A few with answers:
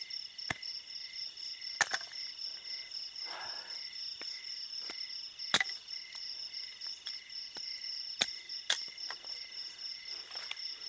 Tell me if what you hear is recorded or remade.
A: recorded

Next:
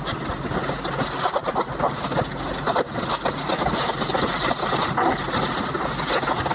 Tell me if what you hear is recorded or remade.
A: recorded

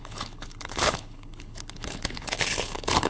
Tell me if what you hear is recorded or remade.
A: remade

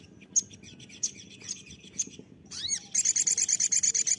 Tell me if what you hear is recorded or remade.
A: recorded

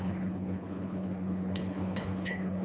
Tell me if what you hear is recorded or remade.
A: remade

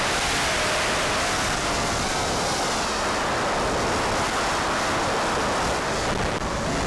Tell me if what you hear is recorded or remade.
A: recorded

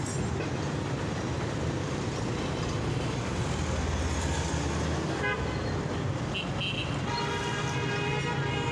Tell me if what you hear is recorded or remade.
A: recorded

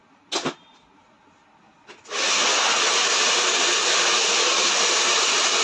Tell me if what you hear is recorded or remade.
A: recorded